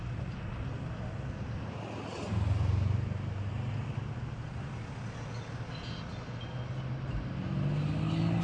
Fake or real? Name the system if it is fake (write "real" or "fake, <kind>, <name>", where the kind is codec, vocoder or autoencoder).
real